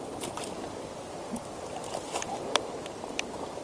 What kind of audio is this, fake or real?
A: real